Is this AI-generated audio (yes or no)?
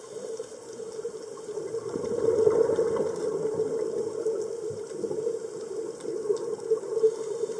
no